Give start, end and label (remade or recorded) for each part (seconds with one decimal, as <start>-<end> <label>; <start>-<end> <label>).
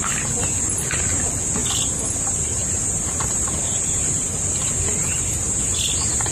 0.0-1.6 recorded; 1.6-2.1 remade; 2.1-2.6 recorded; 2.6-5.4 remade; 5.4-6.3 recorded